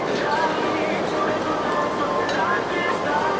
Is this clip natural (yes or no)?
yes